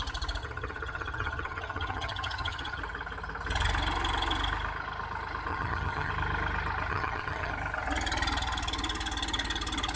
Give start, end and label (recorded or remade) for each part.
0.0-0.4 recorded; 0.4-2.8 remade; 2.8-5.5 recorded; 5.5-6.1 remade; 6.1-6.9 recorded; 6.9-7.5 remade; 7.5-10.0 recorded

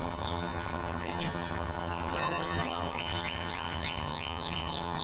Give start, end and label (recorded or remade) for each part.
0.0-5.0 remade